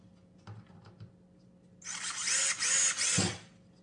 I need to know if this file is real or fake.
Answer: real